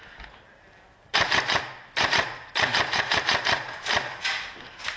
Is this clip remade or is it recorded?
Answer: recorded